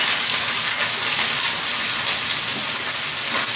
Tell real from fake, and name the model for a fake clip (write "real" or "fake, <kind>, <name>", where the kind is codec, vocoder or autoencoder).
real